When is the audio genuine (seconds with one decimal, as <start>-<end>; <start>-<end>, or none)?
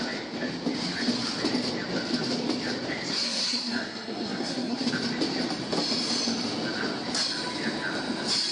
0.0-3.1; 4.9-8.5